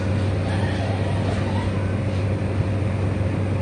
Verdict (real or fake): real